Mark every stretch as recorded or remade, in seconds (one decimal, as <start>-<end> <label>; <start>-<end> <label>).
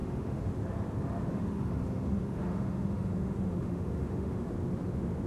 0.0-0.5 remade; 0.5-1.3 recorded; 1.3-4.5 remade; 4.5-5.3 recorded